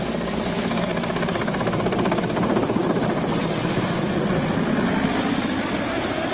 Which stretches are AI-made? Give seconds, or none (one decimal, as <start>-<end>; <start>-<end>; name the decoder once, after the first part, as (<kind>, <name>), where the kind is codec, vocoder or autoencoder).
none